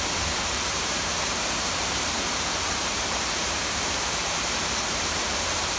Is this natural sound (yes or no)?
no